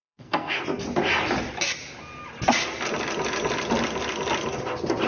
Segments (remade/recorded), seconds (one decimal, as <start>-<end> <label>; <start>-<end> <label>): 0.0-0.6 remade; 0.6-5.1 recorded